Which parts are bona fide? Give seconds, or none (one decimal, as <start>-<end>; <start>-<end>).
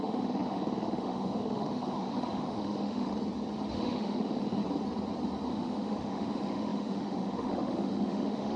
3.1-3.7; 4.6-5.5